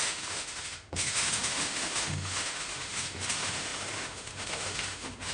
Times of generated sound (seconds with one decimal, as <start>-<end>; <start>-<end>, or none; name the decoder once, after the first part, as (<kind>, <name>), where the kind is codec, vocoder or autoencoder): 0.0-5.3 (autoencoder, DAC-VAE)